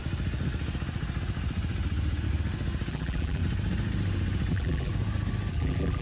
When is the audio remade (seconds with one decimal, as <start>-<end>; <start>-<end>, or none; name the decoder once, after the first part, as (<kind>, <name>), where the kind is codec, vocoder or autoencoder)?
2.9-3.4 (vocoder, BigVGAN v2); 4.5-4.9; 5.5-6.0